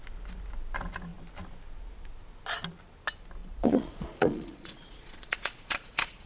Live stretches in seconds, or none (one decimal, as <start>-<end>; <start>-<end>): 0.0-3.4